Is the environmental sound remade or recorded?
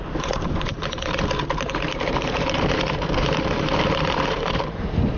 remade